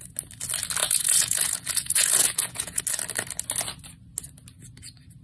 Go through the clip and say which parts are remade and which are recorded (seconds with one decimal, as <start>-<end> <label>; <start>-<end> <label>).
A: 0.0-0.8 recorded; 0.8-2.8 remade; 2.8-5.2 recorded